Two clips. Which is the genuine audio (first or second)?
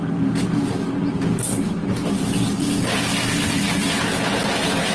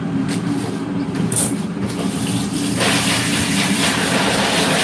first